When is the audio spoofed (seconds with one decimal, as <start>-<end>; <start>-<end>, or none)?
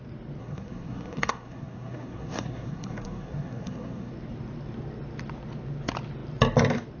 0.4-4.1